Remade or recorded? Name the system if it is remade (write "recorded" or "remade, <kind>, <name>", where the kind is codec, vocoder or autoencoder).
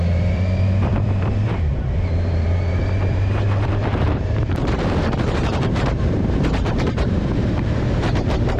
remade, vocoder, BigVGAN v2